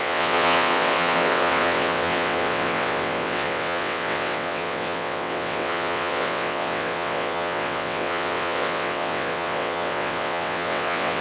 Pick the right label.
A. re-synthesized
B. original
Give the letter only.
A